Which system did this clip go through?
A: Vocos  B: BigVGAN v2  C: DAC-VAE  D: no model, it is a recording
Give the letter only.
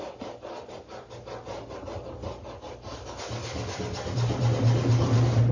D